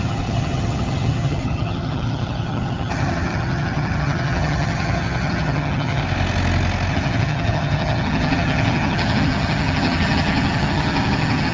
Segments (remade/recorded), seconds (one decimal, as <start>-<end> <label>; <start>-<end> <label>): 0.0-6.0 remade; 6.0-6.9 recorded; 6.9-11.5 remade